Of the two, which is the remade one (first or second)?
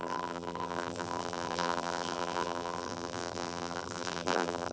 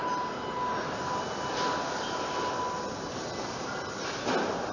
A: first